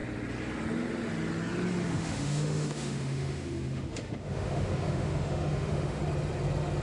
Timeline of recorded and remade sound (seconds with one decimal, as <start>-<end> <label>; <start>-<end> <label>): 0.0-1.9 recorded; 1.9-6.0 remade; 6.0-6.8 recorded